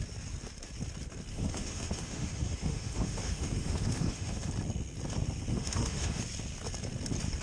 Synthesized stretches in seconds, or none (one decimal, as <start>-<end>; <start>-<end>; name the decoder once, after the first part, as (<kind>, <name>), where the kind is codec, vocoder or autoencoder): 1.3-4.5 (autoencoder, DAC-VAE); 5.5-6.2